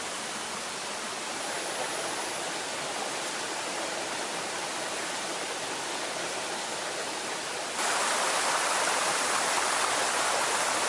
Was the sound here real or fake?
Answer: real